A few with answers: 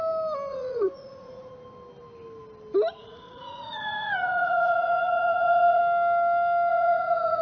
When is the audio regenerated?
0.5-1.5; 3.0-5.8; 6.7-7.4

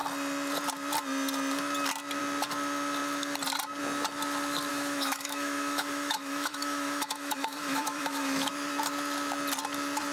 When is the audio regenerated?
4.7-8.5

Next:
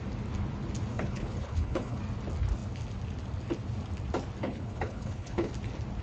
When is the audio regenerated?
0.9-2.0; 4.4-5.5

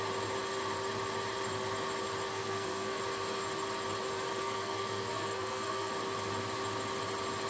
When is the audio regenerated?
2.3-3.0; 4.4-5.9

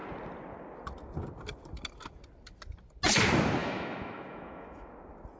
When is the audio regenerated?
3.6-4.9

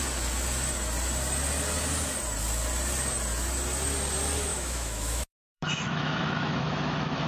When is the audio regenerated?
4.5-7.3